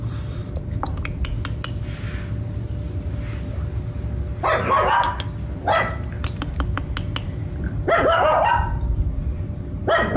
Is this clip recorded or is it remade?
recorded